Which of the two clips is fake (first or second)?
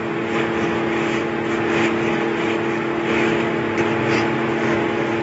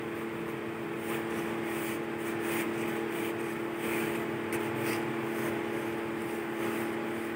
second